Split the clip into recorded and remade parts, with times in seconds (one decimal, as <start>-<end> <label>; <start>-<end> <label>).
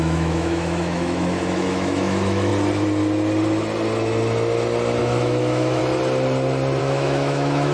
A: 0.0-2.5 remade; 2.5-5.0 recorded; 5.0-5.8 remade; 5.8-6.8 recorded; 6.8-7.7 remade